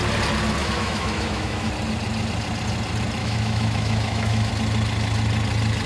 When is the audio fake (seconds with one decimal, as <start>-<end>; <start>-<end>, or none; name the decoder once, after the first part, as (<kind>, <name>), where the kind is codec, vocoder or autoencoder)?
0.6-1.7 (autoencoder, DAC-VAE); 3.2-4.5